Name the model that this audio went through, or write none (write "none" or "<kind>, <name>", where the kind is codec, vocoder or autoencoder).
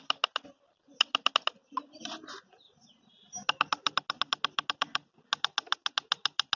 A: none